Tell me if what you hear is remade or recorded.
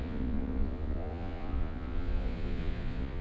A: remade